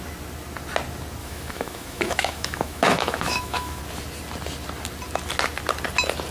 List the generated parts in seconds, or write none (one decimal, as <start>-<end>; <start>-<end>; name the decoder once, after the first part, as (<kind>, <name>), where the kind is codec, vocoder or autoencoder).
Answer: 1.2-3.8 (autoencoder, DAC-VAE)